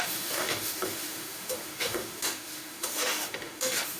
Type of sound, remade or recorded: remade